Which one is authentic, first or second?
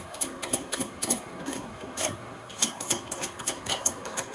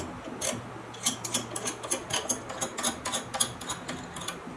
second